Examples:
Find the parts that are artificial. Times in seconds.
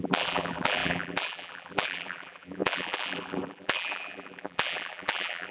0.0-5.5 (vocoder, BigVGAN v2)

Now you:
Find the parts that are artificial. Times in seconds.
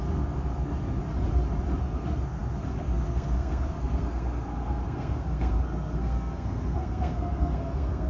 0.0-1.0 (codec, SNAC); 1.8-8.1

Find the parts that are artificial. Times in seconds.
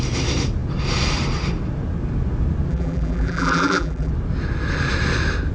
2.7-4.1 (vocoder, BigVGAN v2)